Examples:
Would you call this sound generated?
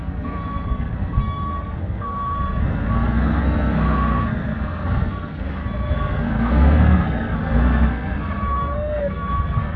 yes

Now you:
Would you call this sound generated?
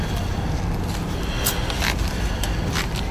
no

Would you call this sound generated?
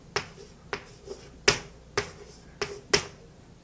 no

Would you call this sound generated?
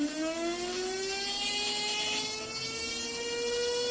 no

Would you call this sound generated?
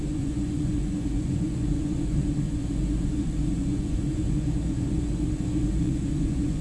yes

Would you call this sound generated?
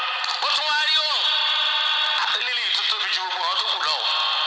no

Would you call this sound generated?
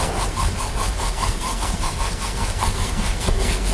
yes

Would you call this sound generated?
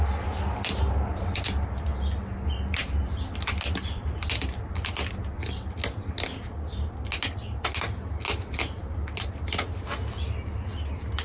no